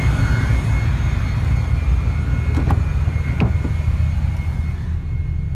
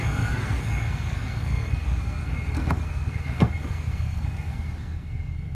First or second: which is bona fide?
first